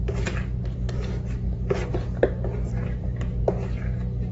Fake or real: real